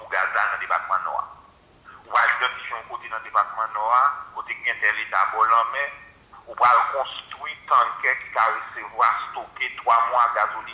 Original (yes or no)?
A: yes